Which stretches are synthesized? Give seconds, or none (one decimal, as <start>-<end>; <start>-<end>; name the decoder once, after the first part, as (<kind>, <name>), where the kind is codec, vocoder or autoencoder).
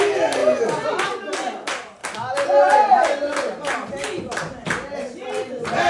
none